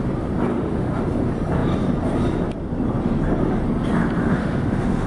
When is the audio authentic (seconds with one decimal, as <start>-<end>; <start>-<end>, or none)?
0.0-0.5; 1.0-4.2